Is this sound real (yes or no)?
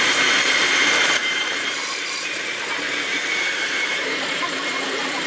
no